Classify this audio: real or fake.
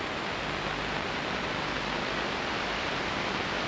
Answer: real